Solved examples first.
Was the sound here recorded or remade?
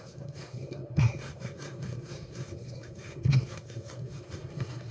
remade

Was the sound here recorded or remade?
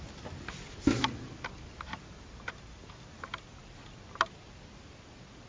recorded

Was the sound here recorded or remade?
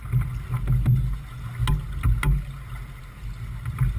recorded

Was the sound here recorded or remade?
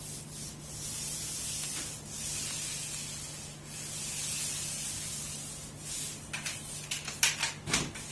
recorded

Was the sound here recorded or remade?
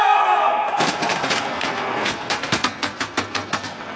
remade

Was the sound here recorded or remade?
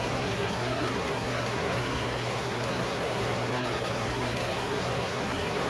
remade